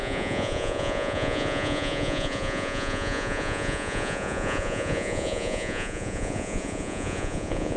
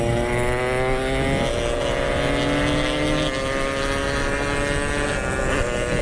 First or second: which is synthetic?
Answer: first